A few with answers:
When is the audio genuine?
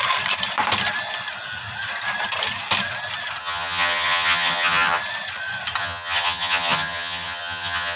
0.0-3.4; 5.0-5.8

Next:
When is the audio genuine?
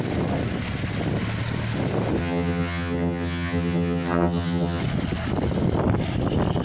0.0-2.2; 4.8-6.6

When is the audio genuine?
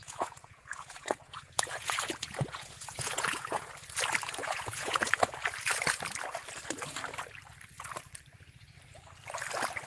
3.7-4.4; 5.2-9.9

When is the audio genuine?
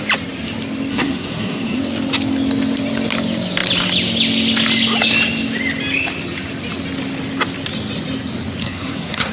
0.0-0.9; 1.8-8.6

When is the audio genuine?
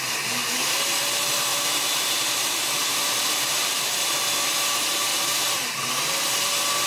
0.0-1.5; 4.1-5.1; 5.7-6.9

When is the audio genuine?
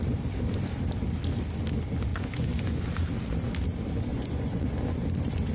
0.0-2.1; 2.8-4.1; 4.7-5.5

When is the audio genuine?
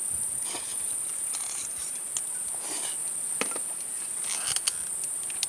0.0-5.5